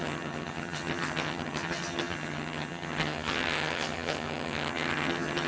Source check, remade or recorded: remade